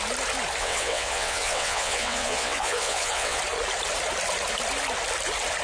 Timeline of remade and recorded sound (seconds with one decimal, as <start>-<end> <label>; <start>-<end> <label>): 0.0-0.6 recorded; 0.6-3.4 remade; 3.4-5.6 recorded